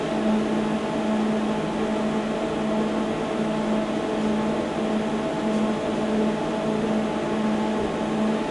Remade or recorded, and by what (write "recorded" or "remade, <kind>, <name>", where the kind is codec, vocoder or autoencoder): recorded